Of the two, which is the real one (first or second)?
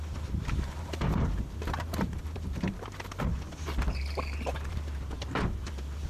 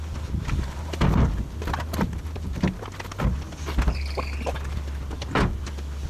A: second